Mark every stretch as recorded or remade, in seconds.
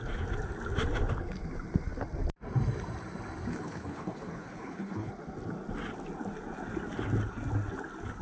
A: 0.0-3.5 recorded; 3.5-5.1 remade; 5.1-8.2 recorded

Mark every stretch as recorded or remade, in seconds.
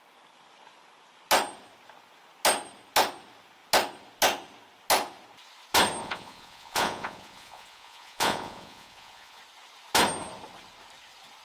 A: 0.0-6.0 recorded; 6.0-9.4 remade; 9.4-11.4 recorded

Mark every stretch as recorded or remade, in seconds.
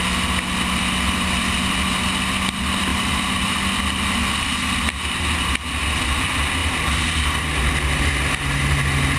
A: 0.0-2.9 recorded; 2.9-3.4 remade; 3.4-6.6 recorded; 6.6-7.7 remade; 7.7-9.2 recorded